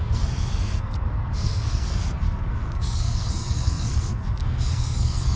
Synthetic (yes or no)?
yes